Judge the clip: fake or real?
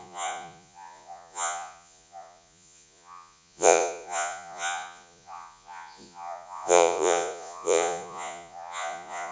fake